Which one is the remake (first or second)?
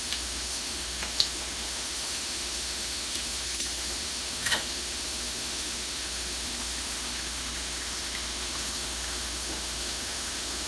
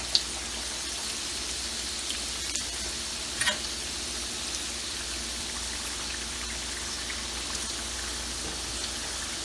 first